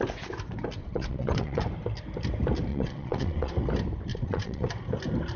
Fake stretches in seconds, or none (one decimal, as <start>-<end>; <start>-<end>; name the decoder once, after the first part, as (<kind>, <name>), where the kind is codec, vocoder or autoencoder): 0.8-1.6 (vocoder, WaveNeXt); 2.7-3.5; 4.1-4.7

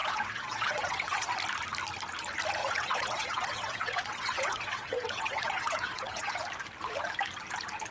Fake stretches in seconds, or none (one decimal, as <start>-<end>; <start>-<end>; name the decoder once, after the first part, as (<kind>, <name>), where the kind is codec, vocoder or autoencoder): 0.0-1.3 (vocoder, WaveNeXt); 2.6-6.4

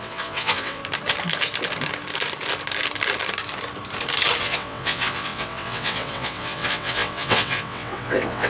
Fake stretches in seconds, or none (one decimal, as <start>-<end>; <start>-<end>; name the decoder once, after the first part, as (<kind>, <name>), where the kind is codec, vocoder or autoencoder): 0.0-0.8 (vocoder, WaveNeXt); 4.4-8.5

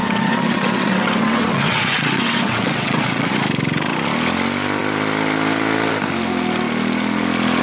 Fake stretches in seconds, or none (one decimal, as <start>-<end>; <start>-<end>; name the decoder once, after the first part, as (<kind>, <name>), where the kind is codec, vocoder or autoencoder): 0.0-3.3 (vocoder, WaveNeXt)

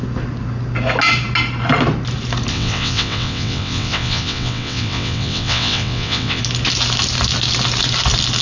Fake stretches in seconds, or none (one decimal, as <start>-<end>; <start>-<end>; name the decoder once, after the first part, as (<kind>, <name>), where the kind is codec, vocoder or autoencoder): 2.5-6.4 (vocoder, WaveNeXt)

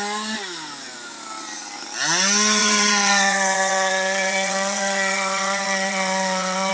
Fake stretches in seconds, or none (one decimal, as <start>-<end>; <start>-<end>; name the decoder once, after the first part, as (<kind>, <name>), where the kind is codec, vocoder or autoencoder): 2.6-6.7 (vocoder, WaveNeXt)

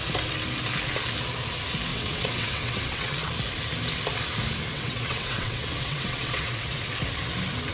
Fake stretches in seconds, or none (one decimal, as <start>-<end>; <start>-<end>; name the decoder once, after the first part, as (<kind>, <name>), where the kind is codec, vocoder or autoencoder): 1.9-3.3 (vocoder, WaveNeXt); 4.7-6.8

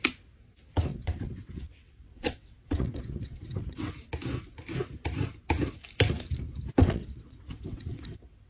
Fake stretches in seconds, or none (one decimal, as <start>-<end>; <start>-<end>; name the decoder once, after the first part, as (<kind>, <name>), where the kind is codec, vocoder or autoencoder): 0.9-3.9 (vocoder, WaveNeXt); 6.8-8.5